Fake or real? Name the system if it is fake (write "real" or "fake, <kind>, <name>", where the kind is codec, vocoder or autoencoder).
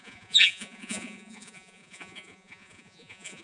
fake, vocoder, Vocos